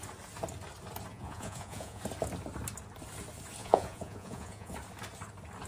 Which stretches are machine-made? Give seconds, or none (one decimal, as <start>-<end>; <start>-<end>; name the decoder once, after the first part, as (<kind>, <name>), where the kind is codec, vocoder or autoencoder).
1.1-2.0 (vocoder, Vocos); 3.6-4.7